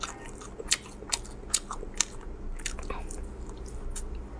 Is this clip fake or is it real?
real